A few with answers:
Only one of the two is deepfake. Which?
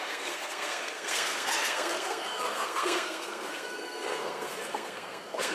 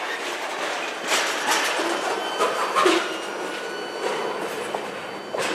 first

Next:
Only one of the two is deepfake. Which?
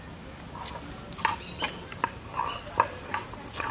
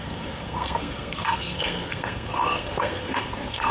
second